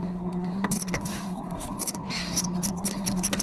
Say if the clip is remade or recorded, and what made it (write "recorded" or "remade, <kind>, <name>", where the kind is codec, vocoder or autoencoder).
remade, codec, SNAC